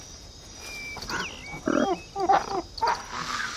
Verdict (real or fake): real